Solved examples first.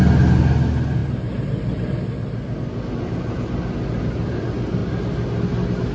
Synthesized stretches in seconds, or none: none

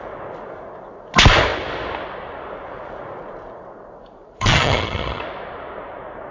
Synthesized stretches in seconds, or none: 4.4-5.2 (vocoder, HiFi-GAN)

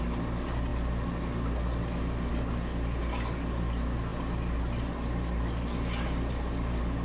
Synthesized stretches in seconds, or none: none